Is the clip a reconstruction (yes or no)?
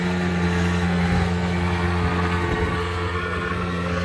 yes